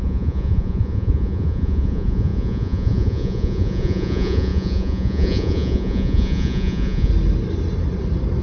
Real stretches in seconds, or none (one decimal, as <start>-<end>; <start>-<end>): 7.1-8.4